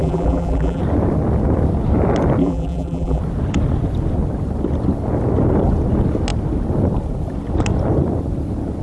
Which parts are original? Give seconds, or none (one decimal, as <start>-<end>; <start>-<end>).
0.8-2.4; 3.2-8.8